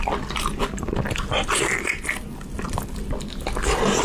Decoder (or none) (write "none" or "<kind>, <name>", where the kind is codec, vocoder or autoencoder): none